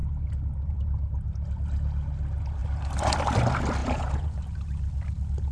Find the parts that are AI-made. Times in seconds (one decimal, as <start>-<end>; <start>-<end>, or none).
3.8-4.4